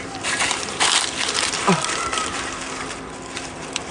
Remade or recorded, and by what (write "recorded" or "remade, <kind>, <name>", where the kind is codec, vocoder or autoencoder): remade, vocoder, BigVGAN v2